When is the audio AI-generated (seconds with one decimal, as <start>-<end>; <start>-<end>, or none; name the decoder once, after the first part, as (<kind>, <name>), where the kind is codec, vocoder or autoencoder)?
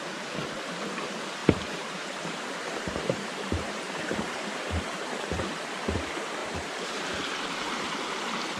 1.4-5.7 (vocoder, BigVGAN v2); 6.4-7.5